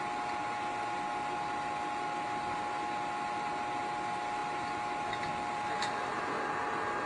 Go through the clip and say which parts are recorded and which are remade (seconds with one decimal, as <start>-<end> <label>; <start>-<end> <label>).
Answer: 0.0-7.1 recorded